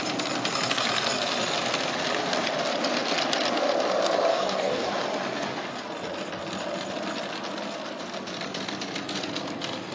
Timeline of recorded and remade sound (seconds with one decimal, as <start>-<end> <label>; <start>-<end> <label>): 0.0-4.3 recorded; 4.3-4.9 remade; 4.9-9.9 recorded